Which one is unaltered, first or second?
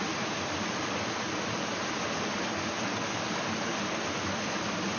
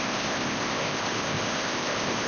first